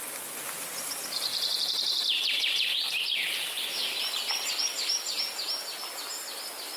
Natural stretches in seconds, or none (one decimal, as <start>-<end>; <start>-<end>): 0.0-1.3; 4.1-6.8